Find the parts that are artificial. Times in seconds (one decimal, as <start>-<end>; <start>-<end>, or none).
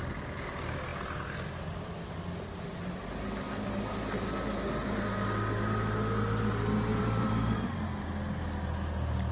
6.9-7.7